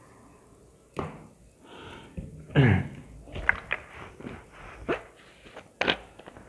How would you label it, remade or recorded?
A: recorded